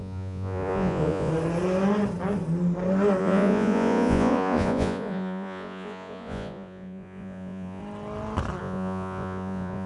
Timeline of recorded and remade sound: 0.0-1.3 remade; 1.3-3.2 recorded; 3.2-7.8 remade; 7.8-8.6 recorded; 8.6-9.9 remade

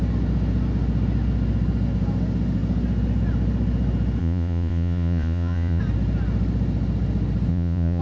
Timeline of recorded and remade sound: 0.0-4.2 recorded; 4.2-5.8 remade; 5.8-7.5 recorded; 7.5-8.0 remade

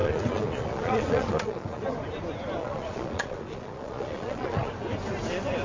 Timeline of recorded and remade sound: 0.0-1.8 remade; 1.8-2.6 recorded; 2.6-4.7 remade; 4.7-5.6 recorded

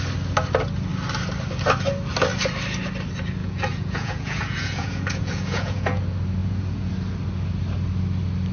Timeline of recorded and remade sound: 0.0-3.4 recorded; 3.4-6.0 remade; 6.0-6.4 recorded; 6.4-6.9 remade; 6.9-8.5 recorded

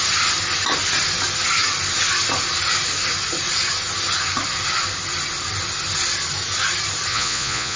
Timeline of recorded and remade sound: 0.0-7.1 recorded; 7.1-7.8 remade

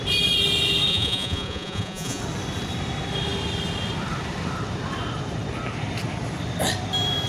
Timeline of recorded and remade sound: 0.0-0.9 recorded; 0.9-2.2 remade; 2.2-7.3 recorded